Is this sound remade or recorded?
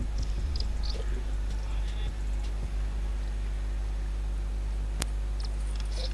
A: recorded